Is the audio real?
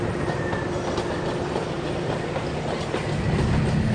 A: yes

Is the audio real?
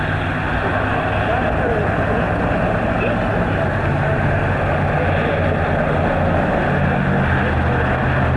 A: yes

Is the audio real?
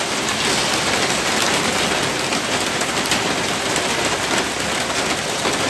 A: yes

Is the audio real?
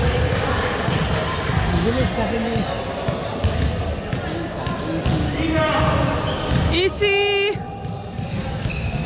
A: yes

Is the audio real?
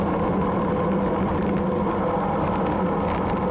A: yes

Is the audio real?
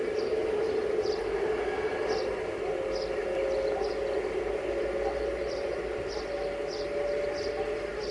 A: yes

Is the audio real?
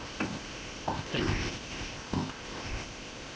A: no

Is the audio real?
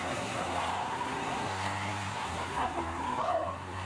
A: no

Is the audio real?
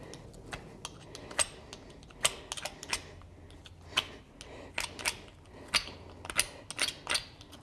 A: yes